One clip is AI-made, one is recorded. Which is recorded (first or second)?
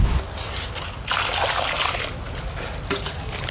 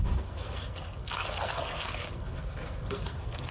first